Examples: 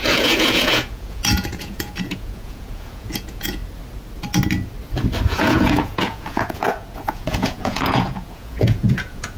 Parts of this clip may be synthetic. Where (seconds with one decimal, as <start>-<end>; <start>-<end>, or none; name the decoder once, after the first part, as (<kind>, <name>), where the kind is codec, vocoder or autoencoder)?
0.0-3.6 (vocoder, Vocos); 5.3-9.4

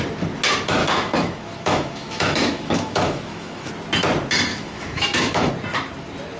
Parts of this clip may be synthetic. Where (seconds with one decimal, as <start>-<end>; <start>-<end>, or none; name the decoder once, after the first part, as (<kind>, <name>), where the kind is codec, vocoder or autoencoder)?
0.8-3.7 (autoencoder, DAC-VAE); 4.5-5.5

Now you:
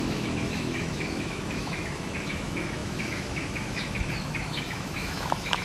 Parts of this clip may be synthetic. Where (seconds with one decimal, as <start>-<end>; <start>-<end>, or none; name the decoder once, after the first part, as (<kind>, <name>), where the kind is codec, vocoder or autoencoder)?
0.0-5.6 (autoencoder, DAC-VAE)

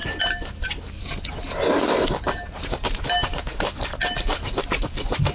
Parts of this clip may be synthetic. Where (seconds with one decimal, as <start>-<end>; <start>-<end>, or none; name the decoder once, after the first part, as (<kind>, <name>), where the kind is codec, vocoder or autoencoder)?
none

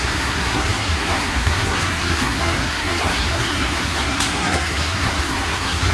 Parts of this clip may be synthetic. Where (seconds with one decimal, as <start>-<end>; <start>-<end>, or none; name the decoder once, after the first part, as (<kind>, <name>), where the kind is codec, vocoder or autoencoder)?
0.0-5.9 (codec, SNAC)